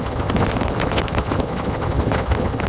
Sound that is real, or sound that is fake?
fake